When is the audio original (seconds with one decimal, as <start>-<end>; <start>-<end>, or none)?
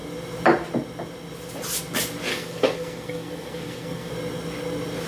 0.0-2.3; 4.1-5.1